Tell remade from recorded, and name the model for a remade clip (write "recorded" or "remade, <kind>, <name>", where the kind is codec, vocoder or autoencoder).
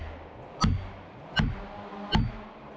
recorded